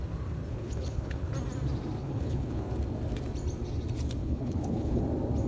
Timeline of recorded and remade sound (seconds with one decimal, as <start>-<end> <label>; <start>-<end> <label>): 0.0-0.5 recorded; 0.5-1.3 remade; 1.3-2.0 recorded; 2.0-2.6 remade; 2.6-4.2 recorded; 4.2-5.0 remade; 5.0-5.5 recorded